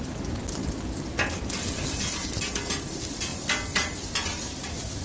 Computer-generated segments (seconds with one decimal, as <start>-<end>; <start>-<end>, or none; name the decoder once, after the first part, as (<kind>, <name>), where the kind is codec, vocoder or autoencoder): 0.0-0.6 (vocoder, BigVGAN v2); 2.8-3.3; 4.0-5.0